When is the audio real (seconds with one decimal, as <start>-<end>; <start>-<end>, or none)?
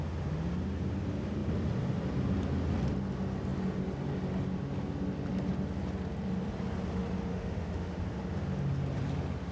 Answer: 0.0-7.3; 8.0-9.5